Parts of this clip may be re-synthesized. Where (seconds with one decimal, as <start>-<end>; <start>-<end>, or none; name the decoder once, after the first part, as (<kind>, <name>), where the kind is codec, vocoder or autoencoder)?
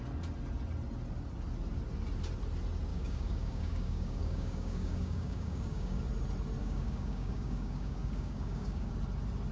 2.9-6.0 (codec, DAC); 6.6-8.9